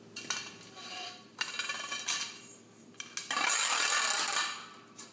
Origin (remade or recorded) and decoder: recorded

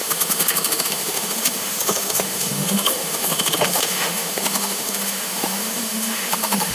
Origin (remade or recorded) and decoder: remade, autoencoder, DAC-VAE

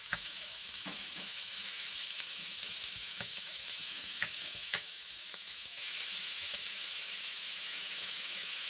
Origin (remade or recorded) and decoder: remade, autoencoder, DAC-VAE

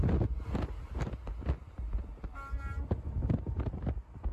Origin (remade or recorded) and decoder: recorded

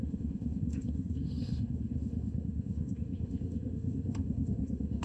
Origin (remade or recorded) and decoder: remade, autoencoder, DAC-VAE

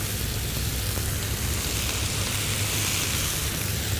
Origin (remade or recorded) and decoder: recorded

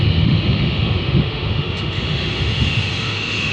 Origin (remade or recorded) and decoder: remade, autoencoder, DAC-VAE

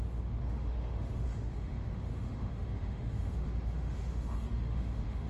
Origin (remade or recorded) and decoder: remade, autoencoder, DAC-VAE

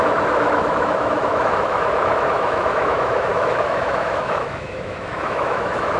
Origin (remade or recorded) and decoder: remade, autoencoder, DAC-VAE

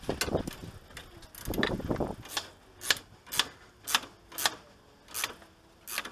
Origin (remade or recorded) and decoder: recorded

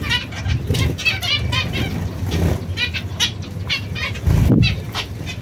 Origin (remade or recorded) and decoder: recorded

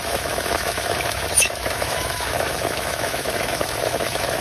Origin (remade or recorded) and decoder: remade, autoencoder, DAC-VAE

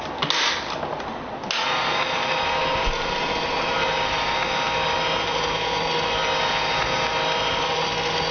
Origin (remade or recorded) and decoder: recorded